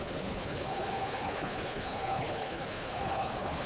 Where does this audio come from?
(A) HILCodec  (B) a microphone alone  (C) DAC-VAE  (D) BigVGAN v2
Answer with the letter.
A